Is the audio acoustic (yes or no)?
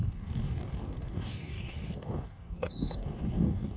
no